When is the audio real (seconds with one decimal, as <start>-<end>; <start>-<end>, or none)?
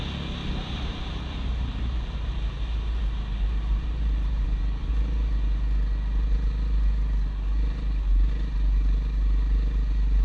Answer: 0.0-0.4; 4.9-10.2